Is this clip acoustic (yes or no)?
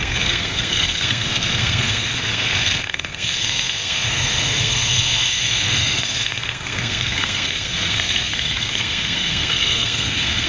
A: no